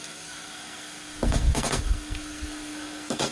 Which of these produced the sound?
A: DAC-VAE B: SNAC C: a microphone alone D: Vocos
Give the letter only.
B